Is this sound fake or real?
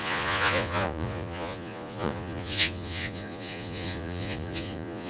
fake